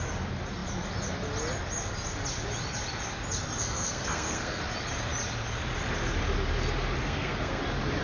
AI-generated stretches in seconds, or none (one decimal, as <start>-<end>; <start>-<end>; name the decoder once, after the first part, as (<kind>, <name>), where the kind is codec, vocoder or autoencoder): 3.6-4.6 (codec, SNAC); 7.0-7.6